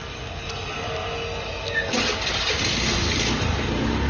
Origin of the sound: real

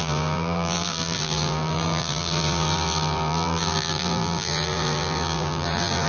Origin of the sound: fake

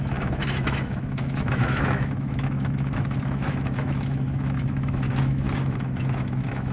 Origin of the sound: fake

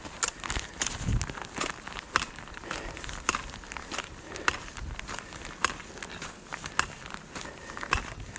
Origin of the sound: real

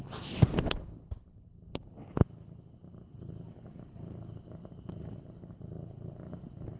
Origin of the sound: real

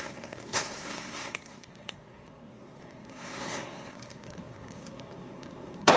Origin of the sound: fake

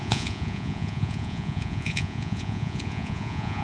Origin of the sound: fake